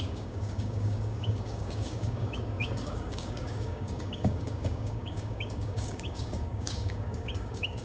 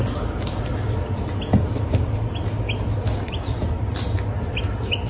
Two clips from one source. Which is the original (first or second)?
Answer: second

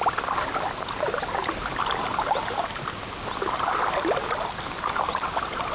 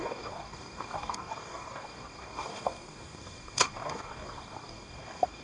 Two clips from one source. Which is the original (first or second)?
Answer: first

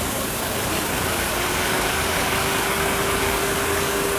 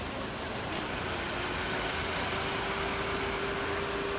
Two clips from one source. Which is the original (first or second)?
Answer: second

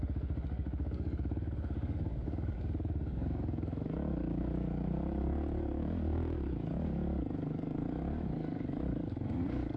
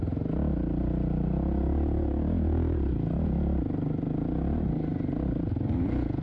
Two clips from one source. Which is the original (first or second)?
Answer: second